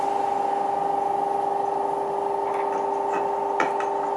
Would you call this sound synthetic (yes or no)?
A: no